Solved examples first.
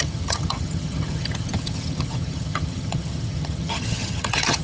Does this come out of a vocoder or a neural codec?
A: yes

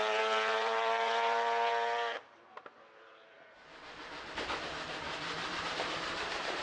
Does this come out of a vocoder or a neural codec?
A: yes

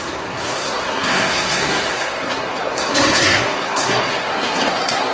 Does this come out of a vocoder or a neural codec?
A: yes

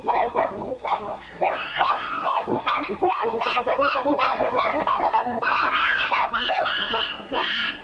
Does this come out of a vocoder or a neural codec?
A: yes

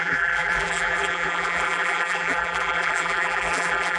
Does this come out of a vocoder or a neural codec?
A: yes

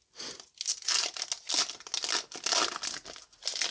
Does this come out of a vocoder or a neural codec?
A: no